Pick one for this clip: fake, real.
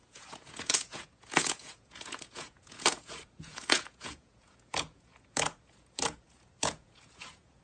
fake